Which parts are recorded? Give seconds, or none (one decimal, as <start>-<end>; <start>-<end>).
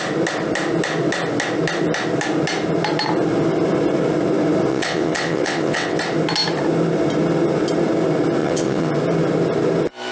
0.0-4.7; 6.0-8.4; 8.9-10.1